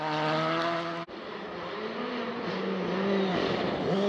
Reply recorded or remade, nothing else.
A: recorded